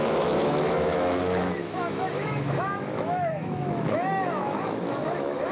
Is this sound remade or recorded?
remade